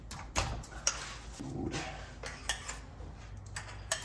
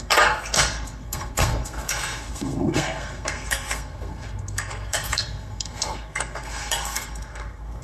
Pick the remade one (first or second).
second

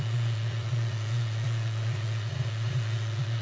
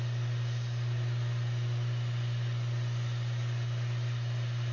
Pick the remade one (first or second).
first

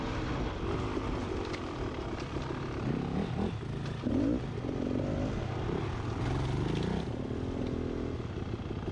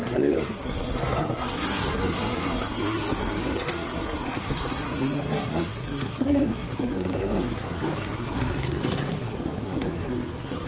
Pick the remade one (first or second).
second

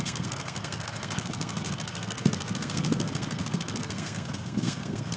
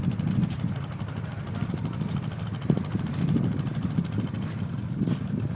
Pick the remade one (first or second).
first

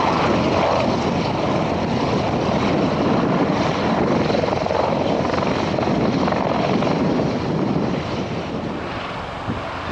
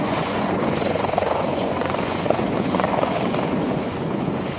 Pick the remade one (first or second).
second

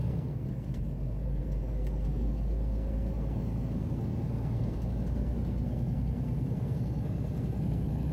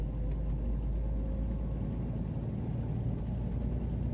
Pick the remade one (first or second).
first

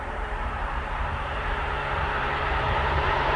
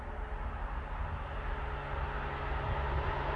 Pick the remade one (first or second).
first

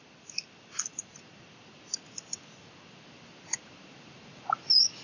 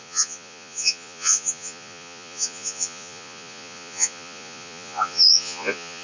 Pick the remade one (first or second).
second